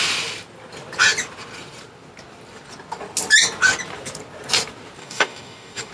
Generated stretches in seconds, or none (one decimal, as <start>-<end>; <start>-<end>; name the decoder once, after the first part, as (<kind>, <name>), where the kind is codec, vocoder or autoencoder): 5.0-5.9 (codec, DAC)